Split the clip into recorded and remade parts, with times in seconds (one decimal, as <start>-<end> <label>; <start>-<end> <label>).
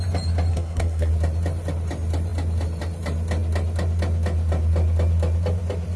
0.0-0.5 recorded; 0.5-1.1 remade; 1.1-6.0 recorded